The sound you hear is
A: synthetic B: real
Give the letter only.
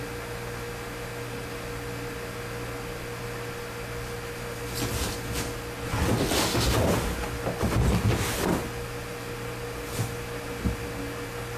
B